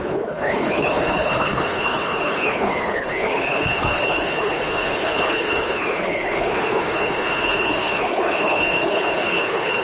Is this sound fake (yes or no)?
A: yes